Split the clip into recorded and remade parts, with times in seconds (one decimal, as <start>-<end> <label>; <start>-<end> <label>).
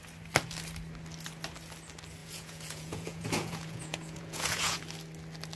0.0-2.2 recorded; 2.2-4.8 remade; 4.8-5.6 recorded